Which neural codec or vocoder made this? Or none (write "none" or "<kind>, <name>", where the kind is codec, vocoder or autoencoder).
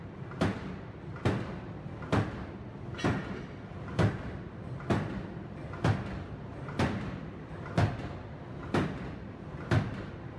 none